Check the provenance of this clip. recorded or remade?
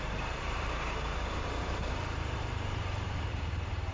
remade